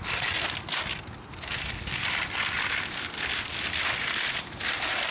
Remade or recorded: recorded